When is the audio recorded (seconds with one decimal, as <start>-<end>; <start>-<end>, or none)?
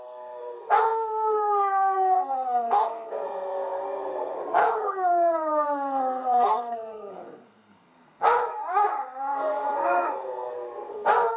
none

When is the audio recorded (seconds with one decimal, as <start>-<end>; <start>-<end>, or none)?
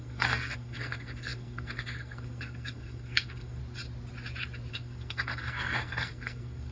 3.6-4.7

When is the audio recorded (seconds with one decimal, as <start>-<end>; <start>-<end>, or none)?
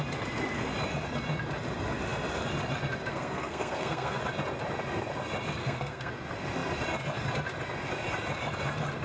0.0-3.1; 4.2-5.6; 6.1-9.0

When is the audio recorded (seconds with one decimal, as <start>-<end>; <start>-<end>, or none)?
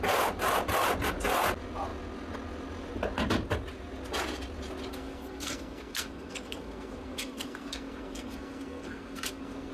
0.0-4.9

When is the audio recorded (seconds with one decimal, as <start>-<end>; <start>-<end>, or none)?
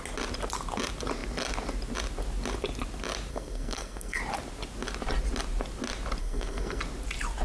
0.0-3.3; 4.2-6.2; 6.8-7.4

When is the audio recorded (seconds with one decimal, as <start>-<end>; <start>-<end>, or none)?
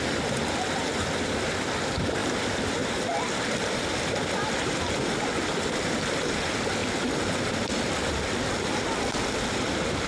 0.0-10.1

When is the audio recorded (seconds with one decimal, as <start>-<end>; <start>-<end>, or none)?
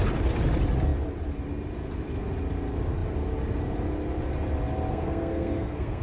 0.0-4.9